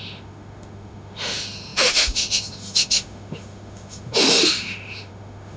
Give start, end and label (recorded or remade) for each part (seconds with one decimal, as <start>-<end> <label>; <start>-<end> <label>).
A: 0.0-5.6 remade